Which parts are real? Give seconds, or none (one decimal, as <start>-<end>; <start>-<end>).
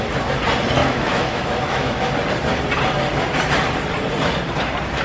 0.0-0.8; 2.1-5.0